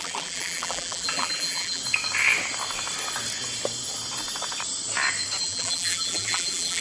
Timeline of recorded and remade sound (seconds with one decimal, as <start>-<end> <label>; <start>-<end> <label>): 0.0-1.8 remade; 1.8-5.4 recorded; 5.4-6.8 remade